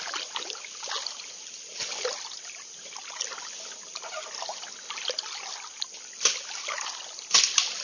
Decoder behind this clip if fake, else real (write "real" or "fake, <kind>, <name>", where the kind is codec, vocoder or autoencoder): real